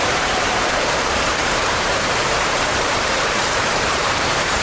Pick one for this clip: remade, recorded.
remade